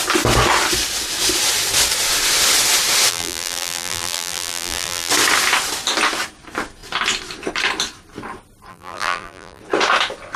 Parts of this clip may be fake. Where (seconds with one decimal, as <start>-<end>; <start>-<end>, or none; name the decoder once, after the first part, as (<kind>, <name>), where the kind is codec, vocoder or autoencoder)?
3.1-5.1 (vocoder, BigVGAN v2); 8.7-9.6